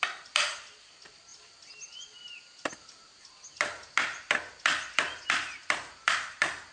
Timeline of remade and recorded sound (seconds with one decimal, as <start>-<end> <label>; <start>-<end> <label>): 0.0-6.7 recorded